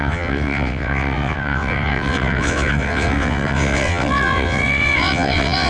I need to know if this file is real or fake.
fake